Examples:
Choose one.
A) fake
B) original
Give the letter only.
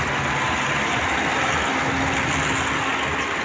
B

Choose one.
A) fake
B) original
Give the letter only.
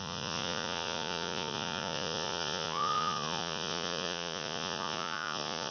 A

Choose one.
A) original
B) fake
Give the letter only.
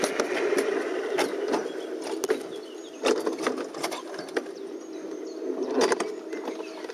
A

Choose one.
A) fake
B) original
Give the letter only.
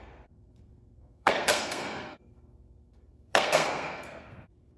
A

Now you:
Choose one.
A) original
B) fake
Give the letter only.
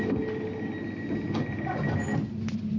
A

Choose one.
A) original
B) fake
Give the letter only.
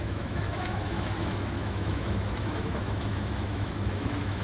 B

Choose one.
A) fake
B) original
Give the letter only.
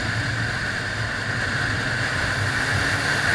B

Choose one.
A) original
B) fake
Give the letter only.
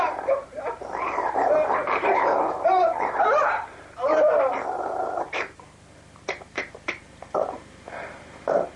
B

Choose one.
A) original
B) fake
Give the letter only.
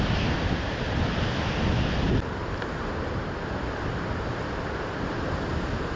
A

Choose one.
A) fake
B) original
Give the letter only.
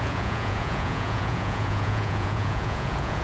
A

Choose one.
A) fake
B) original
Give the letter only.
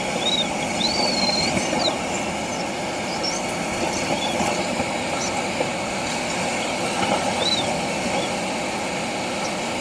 B